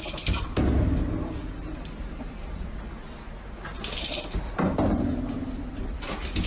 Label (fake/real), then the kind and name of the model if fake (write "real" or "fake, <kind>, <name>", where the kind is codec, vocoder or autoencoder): real